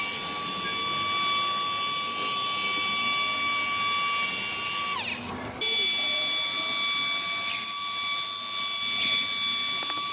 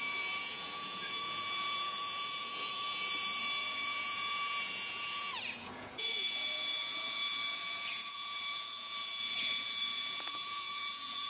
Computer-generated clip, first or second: second